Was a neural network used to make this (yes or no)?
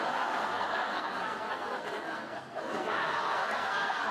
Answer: yes